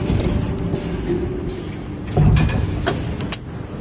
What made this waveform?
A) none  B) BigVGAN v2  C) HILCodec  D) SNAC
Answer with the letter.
A